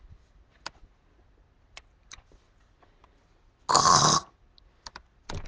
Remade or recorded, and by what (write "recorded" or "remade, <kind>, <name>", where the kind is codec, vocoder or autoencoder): recorded